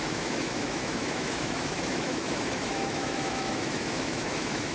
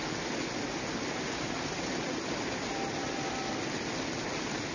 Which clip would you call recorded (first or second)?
second